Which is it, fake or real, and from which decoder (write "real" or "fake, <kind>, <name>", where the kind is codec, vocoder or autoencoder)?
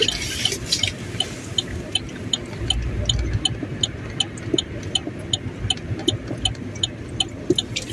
real